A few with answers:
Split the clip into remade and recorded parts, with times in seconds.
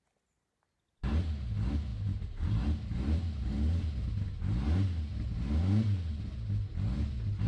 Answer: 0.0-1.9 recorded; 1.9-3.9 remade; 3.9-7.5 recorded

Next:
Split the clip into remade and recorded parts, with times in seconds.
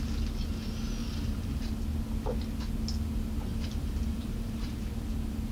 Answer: 0.0-1.0 recorded; 1.0-1.7 remade; 1.7-3.5 recorded; 3.5-4.9 remade; 4.9-5.5 recorded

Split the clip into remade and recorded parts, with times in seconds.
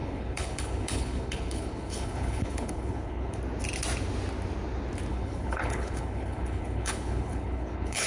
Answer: 0.0-3.4 remade; 3.4-5.1 recorded; 5.1-8.1 remade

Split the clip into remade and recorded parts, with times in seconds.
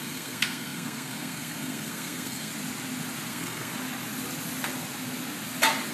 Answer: 0.0-2.5 remade; 2.5-3.3 recorded; 3.3-3.7 remade; 3.7-5.9 recorded